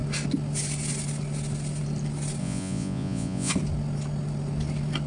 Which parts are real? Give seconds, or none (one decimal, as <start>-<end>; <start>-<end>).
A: 0.0-2.4; 3.5-5.1